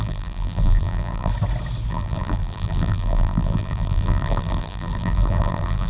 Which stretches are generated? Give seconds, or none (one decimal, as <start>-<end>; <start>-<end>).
0.0-1.3; 1.9-5.9